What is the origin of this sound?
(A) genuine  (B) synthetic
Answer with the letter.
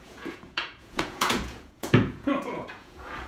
B